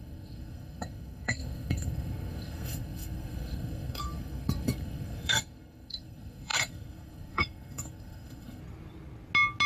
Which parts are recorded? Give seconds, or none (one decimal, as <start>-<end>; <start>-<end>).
8.6-9.7